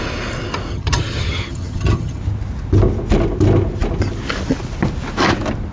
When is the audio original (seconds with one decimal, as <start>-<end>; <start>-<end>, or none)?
0.0-0.7; 2.2-5.7